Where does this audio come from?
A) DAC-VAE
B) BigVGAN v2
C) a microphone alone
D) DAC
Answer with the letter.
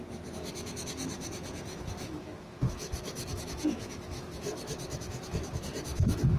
A